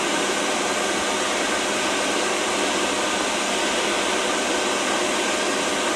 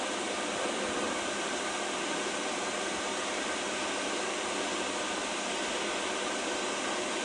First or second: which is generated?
second